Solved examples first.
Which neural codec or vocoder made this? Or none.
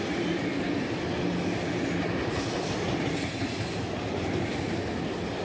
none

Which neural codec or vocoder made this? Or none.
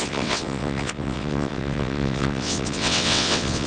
vocoder, WaveNeXt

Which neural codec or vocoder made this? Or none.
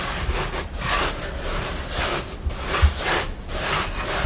none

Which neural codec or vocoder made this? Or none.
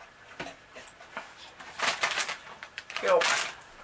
none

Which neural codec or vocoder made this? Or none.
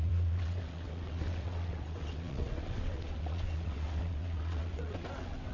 vocoder, WaveNeXt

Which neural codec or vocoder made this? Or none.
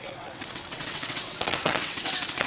vocoder, WaveNeXt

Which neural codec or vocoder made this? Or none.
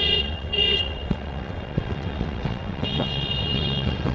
vocoder, WaveNeXt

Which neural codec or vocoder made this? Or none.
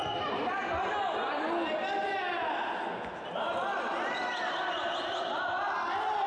none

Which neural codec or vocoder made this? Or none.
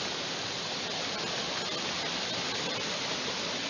none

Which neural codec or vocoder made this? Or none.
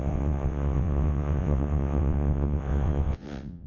vocoder, WaveNeXt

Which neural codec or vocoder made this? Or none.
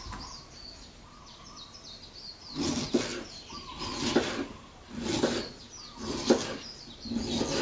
none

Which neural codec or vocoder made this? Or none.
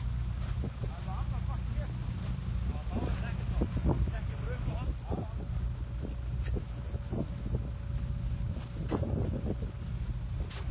none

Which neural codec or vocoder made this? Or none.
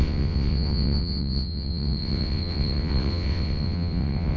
vocoder, WaveNeXt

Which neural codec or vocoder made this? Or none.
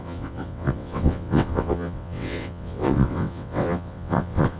vocoder, WaveNeXt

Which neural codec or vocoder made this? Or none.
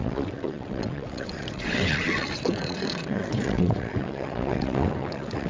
vocoder, WaveNeXt